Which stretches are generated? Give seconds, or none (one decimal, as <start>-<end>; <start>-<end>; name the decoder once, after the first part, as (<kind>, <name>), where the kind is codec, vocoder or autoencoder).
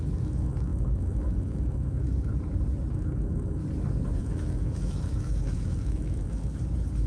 0.0-2.3 (autoencoder, DAC-VAE); 2.9-3.6; 4.2-6.5